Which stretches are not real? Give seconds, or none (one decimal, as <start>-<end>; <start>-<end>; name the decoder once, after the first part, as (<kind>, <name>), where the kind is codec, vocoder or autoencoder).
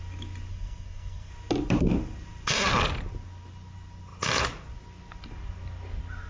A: 0.5-1.3 (codec, SNAC)